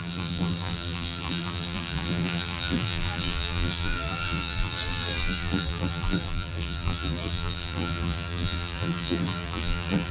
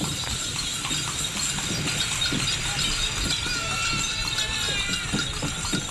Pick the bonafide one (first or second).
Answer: second